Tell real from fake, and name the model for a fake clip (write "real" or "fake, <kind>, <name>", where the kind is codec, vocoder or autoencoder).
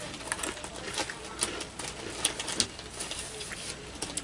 real